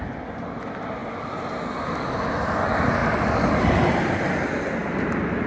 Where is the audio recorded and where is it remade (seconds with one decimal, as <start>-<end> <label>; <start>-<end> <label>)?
0.0-5.5 recorded